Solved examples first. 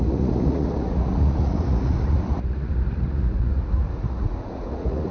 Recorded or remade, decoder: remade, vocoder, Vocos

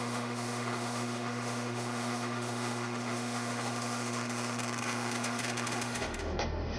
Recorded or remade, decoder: remade, autoencoder, DAC-VAE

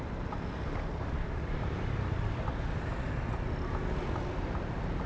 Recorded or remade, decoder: recorded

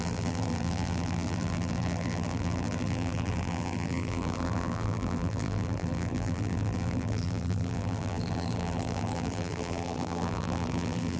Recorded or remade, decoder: remade, vocoder, BigVGAN v2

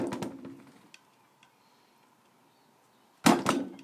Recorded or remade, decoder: recorded